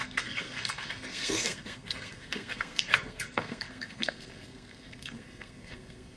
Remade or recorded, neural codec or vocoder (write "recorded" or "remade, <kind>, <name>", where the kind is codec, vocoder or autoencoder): remade, codec, SNAC